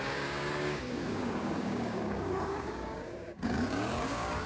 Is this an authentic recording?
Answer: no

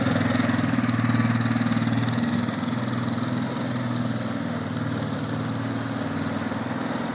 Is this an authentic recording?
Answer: yes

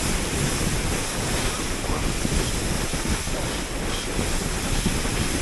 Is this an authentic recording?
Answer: yes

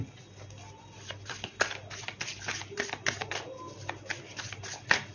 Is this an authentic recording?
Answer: yes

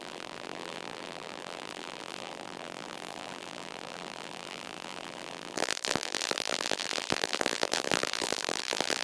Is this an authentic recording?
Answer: no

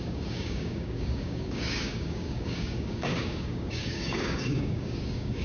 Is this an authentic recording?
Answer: no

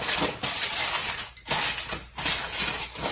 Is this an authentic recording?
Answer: yes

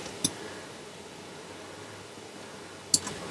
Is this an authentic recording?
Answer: yes